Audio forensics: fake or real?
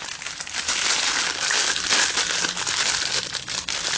real